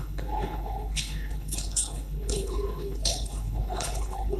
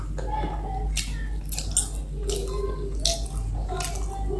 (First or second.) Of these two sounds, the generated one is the first